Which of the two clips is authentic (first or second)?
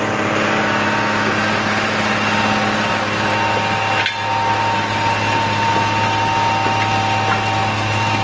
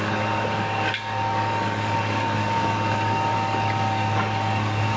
first